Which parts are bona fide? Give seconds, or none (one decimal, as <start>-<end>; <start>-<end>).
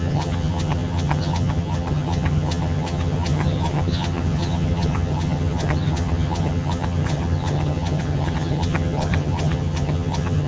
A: none